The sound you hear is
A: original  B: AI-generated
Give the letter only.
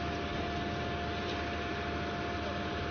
A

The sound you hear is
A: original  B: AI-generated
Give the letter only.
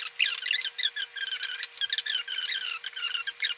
A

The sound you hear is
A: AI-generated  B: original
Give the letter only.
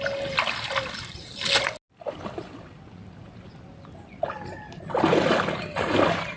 B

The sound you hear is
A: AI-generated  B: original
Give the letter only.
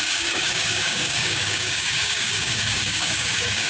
A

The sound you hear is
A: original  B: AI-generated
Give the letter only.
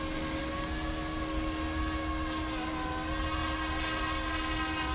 A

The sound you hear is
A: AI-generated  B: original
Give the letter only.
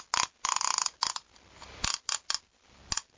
B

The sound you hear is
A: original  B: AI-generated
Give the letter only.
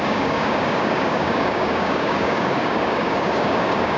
B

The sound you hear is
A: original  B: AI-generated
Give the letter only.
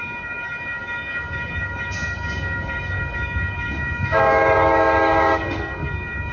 B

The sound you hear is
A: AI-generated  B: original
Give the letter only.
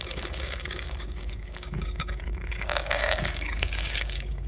A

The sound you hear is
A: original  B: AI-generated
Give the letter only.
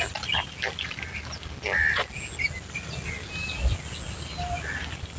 A